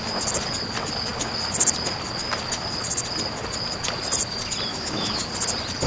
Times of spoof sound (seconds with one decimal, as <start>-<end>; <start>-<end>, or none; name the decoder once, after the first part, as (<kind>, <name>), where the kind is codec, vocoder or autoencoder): 4.7-5.3 (autoencoder, DAC-VAE)